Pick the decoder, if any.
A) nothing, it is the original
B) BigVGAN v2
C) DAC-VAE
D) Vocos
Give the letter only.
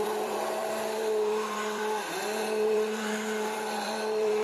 B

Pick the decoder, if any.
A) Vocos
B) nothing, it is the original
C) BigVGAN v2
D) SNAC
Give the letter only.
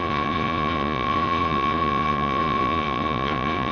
A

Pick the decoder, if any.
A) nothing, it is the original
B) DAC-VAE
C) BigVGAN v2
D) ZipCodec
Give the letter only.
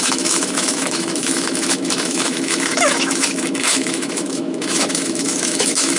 B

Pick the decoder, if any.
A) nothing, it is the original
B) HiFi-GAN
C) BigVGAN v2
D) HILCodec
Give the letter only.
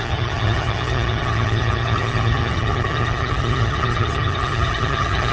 B